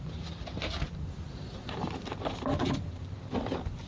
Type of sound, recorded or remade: recorded